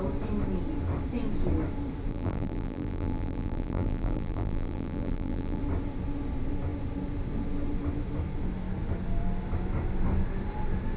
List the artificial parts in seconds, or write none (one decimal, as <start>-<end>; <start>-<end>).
2.1-5.6